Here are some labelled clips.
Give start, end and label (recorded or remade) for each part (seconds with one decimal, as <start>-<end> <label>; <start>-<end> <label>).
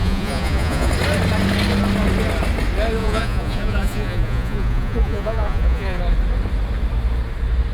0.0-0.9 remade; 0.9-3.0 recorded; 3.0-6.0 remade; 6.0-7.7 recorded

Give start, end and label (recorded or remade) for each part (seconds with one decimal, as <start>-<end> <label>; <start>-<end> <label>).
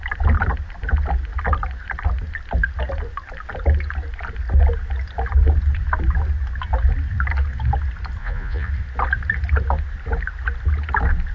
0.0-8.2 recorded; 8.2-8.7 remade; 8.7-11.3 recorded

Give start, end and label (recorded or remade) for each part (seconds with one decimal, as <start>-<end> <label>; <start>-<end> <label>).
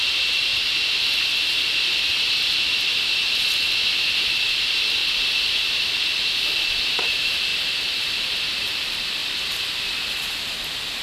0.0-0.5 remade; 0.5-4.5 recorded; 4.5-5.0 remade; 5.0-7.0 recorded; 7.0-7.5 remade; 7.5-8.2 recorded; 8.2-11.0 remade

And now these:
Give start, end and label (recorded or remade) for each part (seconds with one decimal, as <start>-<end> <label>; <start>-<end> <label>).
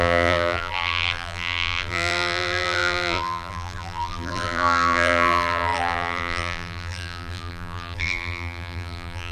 0.0-9.3 remade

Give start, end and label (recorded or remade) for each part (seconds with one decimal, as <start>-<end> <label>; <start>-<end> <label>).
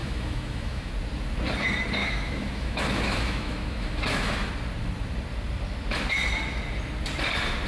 0.0-0.9 remade; 0.9-2.0 recorded; 2.0-4.5 remade; 4.5-7.7 recorded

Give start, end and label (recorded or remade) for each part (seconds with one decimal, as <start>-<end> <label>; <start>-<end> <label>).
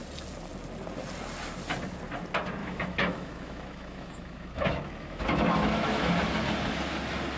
0.0-2.6 recorded; 2.6-6.1 remade; 6.1-7.4 recorded